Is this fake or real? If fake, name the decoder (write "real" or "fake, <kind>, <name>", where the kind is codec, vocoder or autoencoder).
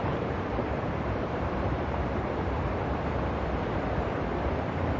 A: fake, vocoder, BigVGAN v2